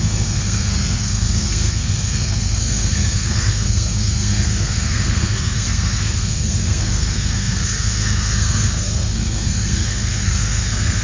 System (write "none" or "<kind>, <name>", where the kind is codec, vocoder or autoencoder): codec, SNAC